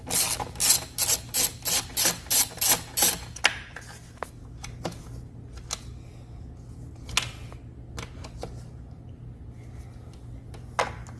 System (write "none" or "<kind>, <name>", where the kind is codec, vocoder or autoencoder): none